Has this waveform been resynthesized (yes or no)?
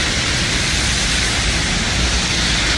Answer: no